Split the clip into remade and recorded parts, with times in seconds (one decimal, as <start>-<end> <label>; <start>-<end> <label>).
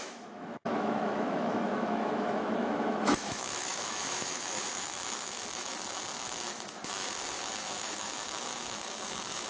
0.0-9.5 remade